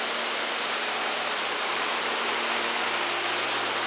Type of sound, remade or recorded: recorded